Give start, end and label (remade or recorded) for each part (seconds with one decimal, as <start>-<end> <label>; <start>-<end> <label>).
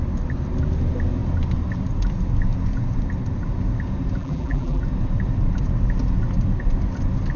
0.0-4.2 recorded; 4.2-4.8 remade; 4.8-7.4 recorded